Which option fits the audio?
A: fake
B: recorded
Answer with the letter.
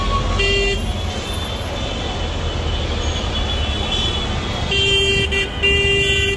B